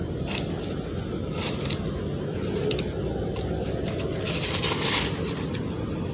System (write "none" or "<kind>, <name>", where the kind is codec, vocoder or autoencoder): none